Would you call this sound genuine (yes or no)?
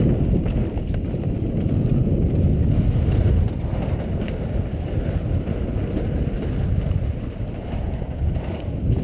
yes